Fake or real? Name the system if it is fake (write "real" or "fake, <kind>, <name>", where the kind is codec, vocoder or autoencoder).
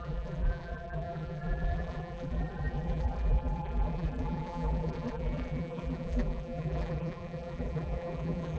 fake, vocoder, BigVGAN v2